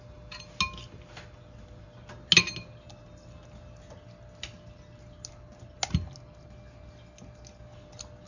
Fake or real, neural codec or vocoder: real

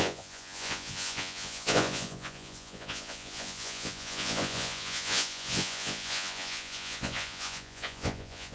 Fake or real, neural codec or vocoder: fake, vocoder, Vocos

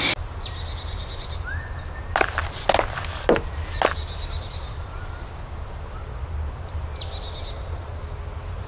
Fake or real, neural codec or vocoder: real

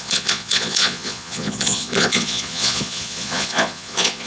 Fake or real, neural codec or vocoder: fake, vocoder, Vocos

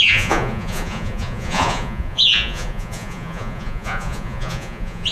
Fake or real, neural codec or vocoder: fake, vocoder, Vocos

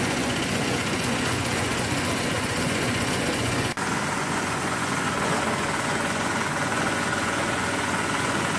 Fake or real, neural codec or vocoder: fake, vocoder, Vocos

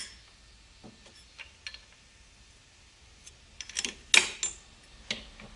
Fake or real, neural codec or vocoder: real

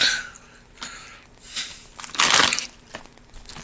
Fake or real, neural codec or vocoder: real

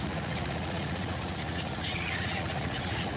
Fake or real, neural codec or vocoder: fake, vocoder, Vocos